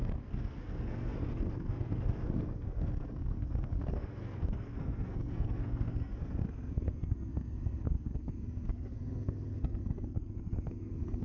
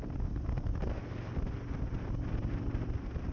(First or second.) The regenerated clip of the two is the first